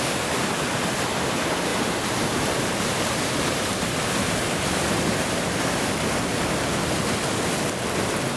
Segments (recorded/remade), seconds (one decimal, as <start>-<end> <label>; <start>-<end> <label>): 0.0-1.7 recorded; 1.7-5.8 remade; 5.8-8.4 recorded